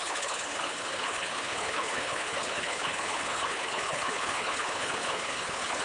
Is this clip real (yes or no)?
no